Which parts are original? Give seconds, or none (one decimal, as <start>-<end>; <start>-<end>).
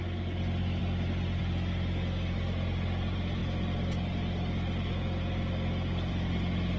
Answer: 0.0-6.8